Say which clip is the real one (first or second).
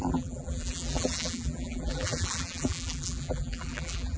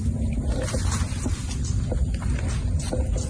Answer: second